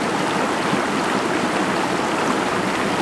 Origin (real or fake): real